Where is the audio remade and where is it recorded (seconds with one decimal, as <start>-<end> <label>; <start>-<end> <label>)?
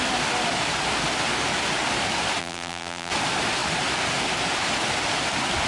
0.0-2.4 recorded; 2.4-3.1 remade; 3.1-5.7 recorded